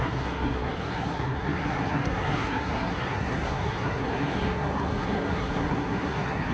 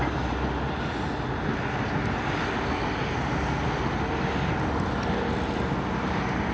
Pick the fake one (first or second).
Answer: first